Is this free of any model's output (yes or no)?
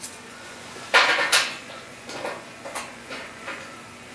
no